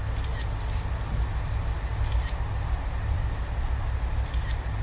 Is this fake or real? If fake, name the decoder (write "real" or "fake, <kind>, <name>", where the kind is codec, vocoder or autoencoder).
real